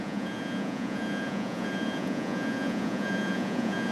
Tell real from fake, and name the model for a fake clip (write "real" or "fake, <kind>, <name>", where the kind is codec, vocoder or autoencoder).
fake, vocoder, Vocos